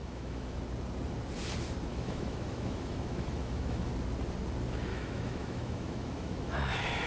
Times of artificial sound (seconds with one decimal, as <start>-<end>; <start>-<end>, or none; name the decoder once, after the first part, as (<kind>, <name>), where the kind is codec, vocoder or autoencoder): 0.0-0.6 (autoencoder, DAC-VAE); 1.9-3.9; 4.9-7.1